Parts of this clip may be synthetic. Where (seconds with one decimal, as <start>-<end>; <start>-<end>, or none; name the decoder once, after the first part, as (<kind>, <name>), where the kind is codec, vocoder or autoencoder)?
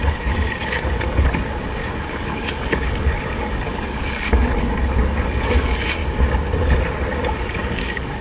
0.0-6.0 (codec, DAC); 7.3-8.2